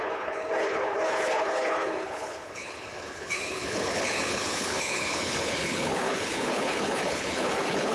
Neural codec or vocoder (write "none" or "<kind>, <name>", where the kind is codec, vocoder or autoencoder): codec, HILCodec